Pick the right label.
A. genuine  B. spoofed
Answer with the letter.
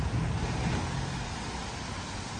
A